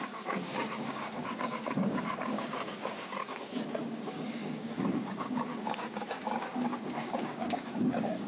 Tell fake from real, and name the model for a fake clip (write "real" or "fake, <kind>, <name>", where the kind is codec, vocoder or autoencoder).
fake, codec, DAC